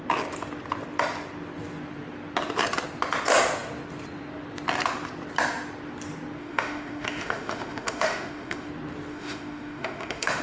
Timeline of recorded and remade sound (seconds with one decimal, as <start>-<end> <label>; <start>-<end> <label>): 0.0-6.4 recorded; 6.4-8.7 remade; 8.7-9.1 recorded; 9.1-10.4 remade